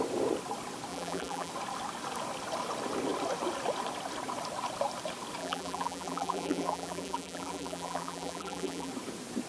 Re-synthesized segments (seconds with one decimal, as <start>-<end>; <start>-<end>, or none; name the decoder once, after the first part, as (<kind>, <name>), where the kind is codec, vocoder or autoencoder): 0.9-1.5 (vocoder, BigVGAN v2); 5.4-8.9